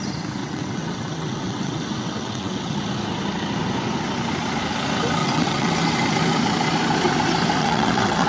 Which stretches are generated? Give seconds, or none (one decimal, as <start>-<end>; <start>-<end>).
0.4-2.8; 5.2-5.7; 7.6-8.3